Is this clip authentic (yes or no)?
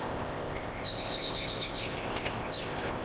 no